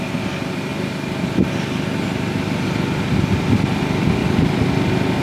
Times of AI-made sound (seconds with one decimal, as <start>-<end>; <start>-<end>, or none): none